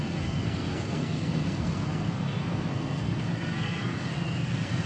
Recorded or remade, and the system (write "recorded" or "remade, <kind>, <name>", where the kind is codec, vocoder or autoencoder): remade, codec, SNAC